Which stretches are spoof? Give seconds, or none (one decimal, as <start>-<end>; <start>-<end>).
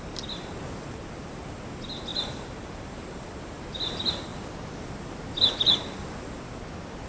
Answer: 2.1-3.2